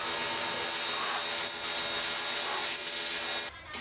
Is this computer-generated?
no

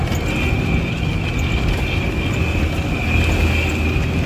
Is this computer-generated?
no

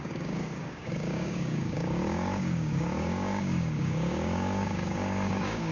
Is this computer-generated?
yes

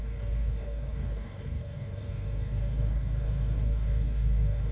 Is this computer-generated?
yes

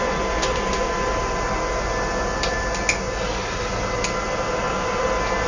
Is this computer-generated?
no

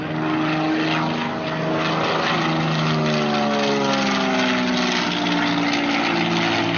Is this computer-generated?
no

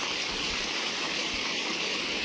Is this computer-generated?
yes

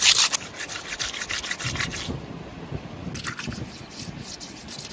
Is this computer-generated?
no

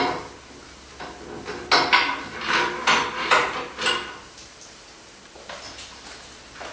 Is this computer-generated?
no